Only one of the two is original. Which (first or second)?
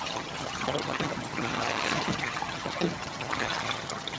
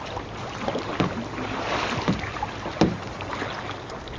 second